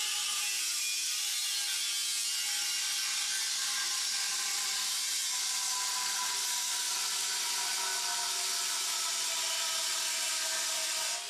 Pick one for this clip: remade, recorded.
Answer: recorded